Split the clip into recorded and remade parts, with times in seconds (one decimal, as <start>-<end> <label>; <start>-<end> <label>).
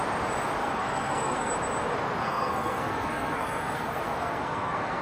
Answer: 0.0-0.6 recorded; 0.6-1.5 remade; 1.5-2.2 recorded; 2.2-5.0 remade